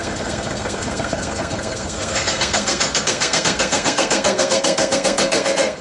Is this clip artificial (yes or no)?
yes